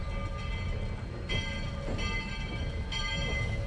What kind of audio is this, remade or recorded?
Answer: recorded